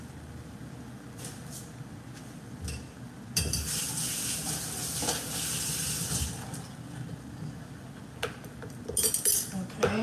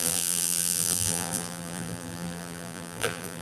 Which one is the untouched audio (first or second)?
first